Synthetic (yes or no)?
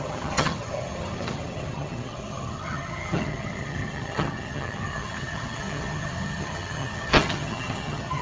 yes